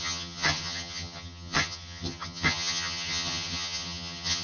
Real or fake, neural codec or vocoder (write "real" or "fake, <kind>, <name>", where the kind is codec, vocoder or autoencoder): fake, vocoder, HiFi-GAN